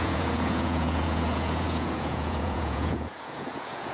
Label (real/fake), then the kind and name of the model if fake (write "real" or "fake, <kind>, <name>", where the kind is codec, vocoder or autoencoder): fake, vocoder, Vocos